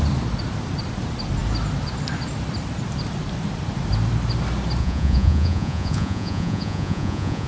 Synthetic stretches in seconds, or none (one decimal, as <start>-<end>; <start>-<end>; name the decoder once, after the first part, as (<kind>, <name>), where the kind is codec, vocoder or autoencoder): 4.8-7.5 (vocoder, Vocos)